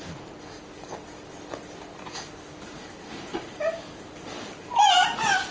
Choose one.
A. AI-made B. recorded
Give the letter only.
B